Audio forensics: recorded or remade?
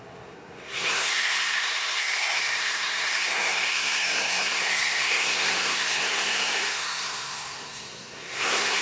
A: remade